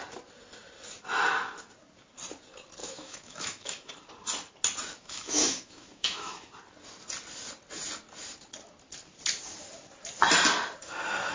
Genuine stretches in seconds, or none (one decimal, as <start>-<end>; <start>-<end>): 0.0-2.8; 3.9-4.9; 6.5-11.3